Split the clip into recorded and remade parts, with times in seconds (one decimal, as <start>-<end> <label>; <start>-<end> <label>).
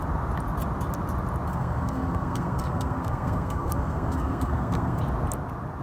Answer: 0.0-1.5 recorded; 1.5-5.0 remade; 5.0-5.8 recorded